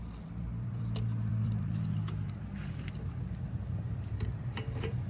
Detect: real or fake fake